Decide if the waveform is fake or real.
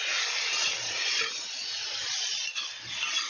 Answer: real